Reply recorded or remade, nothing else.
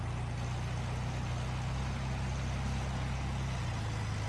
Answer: recorded